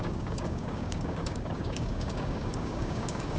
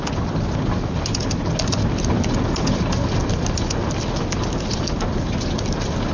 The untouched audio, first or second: second